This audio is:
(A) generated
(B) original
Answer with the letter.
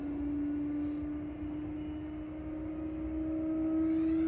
B